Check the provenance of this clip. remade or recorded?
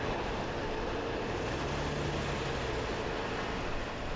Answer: recorded